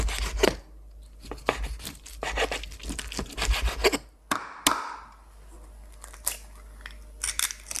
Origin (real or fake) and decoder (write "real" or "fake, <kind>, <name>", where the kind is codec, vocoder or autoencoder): real